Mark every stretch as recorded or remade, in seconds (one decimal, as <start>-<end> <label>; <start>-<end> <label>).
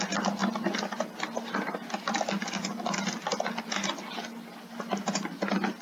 0.0-5.8 recorded